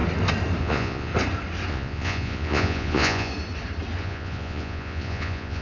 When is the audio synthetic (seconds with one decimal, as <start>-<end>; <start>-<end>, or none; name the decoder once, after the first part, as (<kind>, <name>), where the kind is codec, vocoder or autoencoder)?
0.6-1.1 (vocoder, Vocos); 1.7-3.3; 4.0-5.6